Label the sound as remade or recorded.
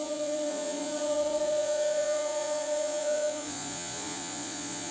remade